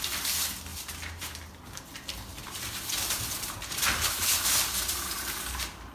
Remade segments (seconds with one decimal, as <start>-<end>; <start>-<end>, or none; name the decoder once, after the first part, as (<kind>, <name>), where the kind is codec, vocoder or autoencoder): 0.7-1.9 (vocoder, BigVGAN v2); 2.3-5.9